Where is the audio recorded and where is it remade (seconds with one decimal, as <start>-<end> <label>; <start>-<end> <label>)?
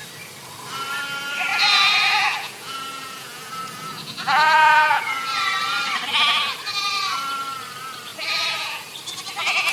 0.0-1.5 recorded; 1.5-5.4 remade; 5.4-8.1 recorded; 8.1-8.8 remade; 8.8-9.7 recorded